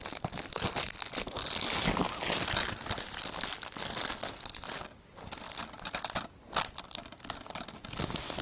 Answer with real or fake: real